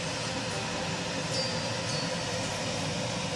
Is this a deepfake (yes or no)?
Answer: no